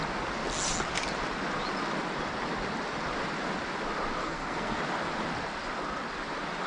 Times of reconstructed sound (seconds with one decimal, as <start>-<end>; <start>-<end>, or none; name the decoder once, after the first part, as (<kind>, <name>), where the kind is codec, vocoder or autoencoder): 4.2-4.8 (codec, SNAC)

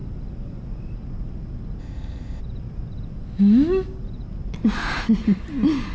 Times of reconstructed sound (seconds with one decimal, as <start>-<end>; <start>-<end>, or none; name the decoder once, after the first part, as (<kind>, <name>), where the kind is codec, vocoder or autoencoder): 1.8-2.4 (codec, ZipCodec)

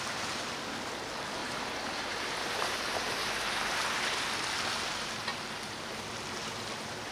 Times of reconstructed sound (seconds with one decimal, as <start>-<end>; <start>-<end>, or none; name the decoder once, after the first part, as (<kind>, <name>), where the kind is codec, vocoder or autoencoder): 1.4-4.2 (vocoder, BigVGAN v2); 5.3-6.1

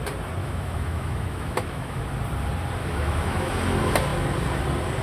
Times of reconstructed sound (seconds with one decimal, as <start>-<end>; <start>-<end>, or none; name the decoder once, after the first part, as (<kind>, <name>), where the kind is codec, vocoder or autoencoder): 0.4-2.0 (autoencoder, DAC-VAE); 2.8-3.5